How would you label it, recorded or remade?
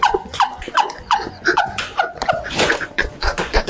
remade